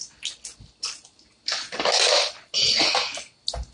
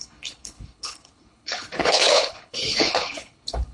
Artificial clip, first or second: second